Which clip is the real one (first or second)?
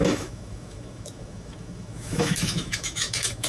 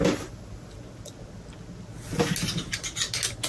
second